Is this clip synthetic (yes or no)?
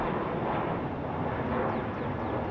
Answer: no